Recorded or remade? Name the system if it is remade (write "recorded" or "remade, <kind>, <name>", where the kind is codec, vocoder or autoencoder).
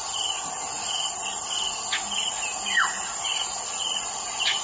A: recorded